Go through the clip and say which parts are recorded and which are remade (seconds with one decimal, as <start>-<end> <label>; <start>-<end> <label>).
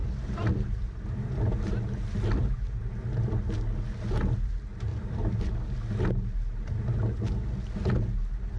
0.0-1.3 remade; 1.3-4.9 recorded; 4.9-5.5 remade; 5.5-8.6 recorded